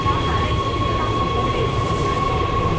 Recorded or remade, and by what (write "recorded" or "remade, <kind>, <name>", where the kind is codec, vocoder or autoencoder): recorded